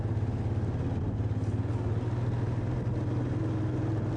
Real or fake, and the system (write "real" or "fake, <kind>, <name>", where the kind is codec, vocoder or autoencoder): real